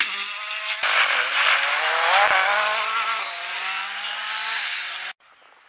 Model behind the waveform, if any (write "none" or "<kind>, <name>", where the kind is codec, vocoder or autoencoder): none